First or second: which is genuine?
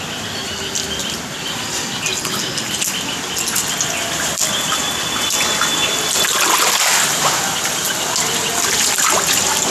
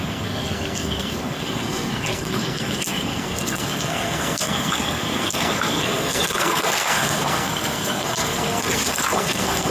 first